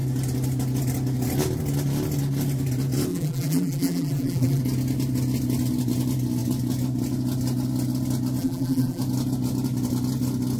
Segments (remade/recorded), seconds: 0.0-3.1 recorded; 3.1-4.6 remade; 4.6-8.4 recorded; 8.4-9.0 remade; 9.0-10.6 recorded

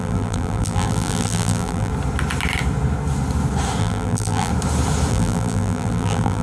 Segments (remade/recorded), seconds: 0.0-1.9 remade; 1.9-3.8 recorded; 3.8-4.5 remade; 4.5-5.1 recorded; 5.1-6.4 remade

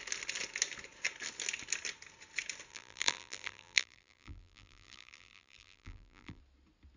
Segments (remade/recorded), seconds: 0.0-2.7 recorded; 2.7-6.4 remade; 6.4-7.0 recorded

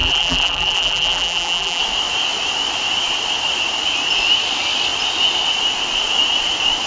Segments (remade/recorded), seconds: 0.0-1.8 remade; 1.8-6.9 recorded

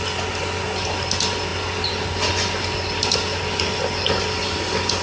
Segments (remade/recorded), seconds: 0.0-5.0 recorded

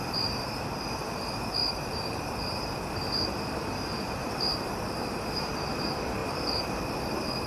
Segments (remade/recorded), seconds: 0.0-0.8 remade; 0.8-1.6 recorded; 1.6-5.5 remade; 5.5-6.2 recorded; 6.2-7.0 remade; 7.0-7.5 recorded

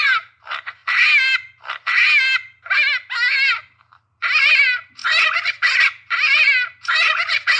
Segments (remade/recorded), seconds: 0.0-0.8 remade; 0.8-3.5 recorded; 3.5-5.0 remade; 5.0-5.7 recorded; 5.7-7.6 remade